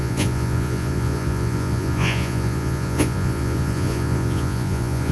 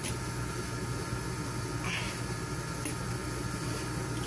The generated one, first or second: first